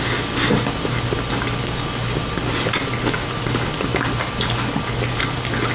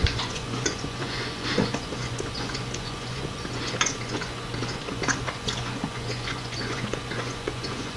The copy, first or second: second